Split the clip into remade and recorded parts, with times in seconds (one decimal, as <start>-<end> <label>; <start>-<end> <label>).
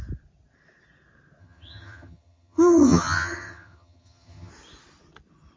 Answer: 0.0-1.4 recorded; 1.4-4.5 remade; 4.5-5.6 recorded